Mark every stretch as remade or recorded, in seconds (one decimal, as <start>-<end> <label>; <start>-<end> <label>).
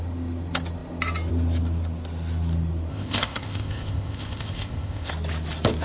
0.0-2.9 recorded; 2.9-5.1 remade; 5.1-5.8 recorded